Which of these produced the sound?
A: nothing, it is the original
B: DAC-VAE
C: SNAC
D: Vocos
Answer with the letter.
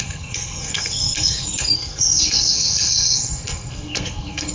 C